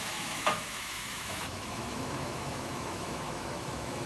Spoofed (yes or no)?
yes